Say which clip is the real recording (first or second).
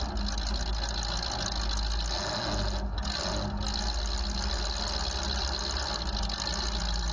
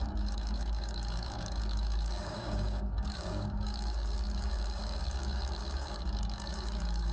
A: first